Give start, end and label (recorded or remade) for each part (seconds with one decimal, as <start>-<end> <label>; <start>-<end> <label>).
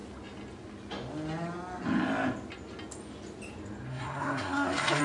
0.0-3.9 recorded; 3.9-5.0 remade